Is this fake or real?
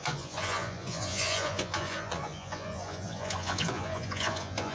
fake